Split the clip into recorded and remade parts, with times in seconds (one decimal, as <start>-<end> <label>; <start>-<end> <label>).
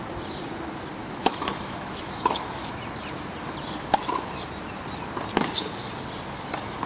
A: 0.0-1.0 recorded; 1.0-2.8 remade; 2.8-6.9 recorded